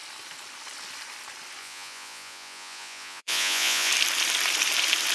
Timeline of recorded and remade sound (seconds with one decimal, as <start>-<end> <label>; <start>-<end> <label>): 0.0-1.6 recorded; 1.6-3.9 remade; 3.9-5.1 recorded